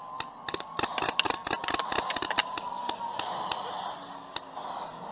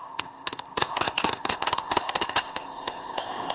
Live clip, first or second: first